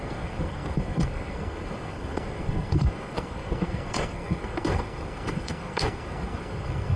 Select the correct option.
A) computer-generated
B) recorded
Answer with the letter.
A